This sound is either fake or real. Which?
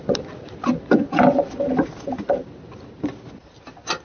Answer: real